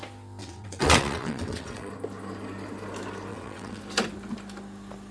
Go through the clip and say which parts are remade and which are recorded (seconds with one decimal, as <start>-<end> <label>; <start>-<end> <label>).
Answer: 0.0-0.4 recorded; 0.4-1.9 remade; 1.9-3.3 recorded; 3.3-3.8 remade; 3.8-5.1 recorded